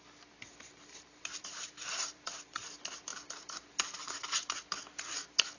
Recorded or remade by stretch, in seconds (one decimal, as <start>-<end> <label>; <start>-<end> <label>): 0.0-0.9 recorded; 0.9-2.7 remade; 2.7-3.1 recorded; 3.1-4.2 remade; 4.2-5.6 recorded